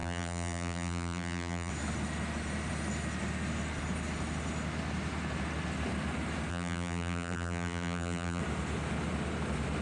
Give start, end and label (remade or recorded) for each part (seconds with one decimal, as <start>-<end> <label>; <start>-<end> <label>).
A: 0.0-1.7 remade; 1.7-6.5 recorded; 6.5-8.4 remade; 8.4-9.8 recorded